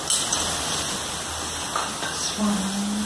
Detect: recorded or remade recorded